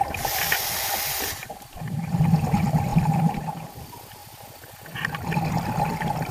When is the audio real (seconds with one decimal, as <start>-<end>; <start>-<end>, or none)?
0.0-1.4; 2.2-2.9; 3.7-6.3